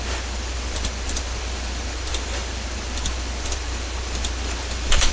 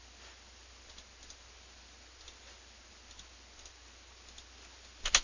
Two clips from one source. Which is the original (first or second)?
second